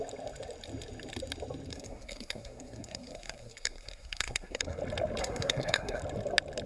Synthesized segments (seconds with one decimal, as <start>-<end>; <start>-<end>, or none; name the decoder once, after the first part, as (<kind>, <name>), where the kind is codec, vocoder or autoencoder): 1.7-4.8 (codec, SNAC); 5.2-6.0